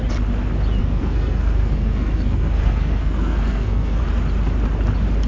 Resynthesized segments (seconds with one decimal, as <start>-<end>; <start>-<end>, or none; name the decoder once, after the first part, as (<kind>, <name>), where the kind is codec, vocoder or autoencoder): 0.8-4.0 (codec, SNAC)